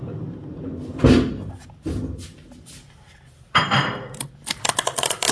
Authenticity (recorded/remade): recorded